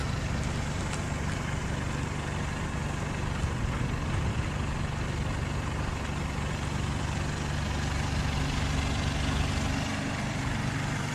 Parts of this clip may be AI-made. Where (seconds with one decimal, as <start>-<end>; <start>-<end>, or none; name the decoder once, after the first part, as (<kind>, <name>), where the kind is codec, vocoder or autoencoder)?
none